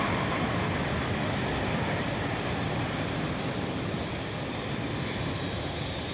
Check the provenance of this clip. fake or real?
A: fake